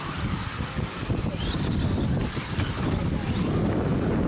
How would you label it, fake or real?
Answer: fake